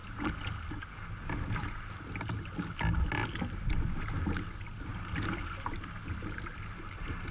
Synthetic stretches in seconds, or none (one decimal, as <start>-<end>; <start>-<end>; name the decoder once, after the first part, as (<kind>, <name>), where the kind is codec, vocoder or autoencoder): none